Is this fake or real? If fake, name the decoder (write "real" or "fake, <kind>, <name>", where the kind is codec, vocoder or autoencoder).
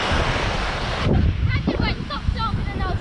real